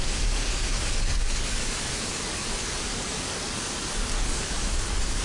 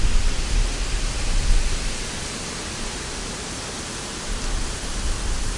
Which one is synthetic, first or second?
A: first